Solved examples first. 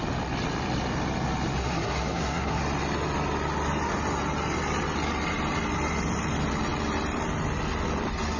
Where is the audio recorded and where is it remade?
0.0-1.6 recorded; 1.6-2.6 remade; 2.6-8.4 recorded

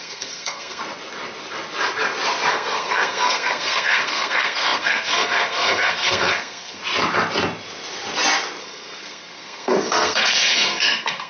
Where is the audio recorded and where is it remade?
0.0-0.8 remade; 0.8-2.5 recorded; 2.5-6.8 remade; 6.8-8.6 recorded; 8.6-11.3 remade